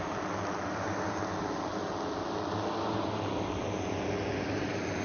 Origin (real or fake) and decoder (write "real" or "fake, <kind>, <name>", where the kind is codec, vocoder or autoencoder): real